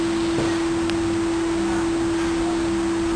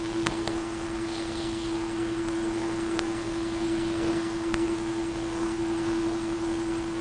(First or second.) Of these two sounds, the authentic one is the first